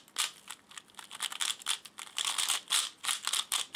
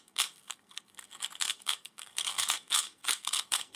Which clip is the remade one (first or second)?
second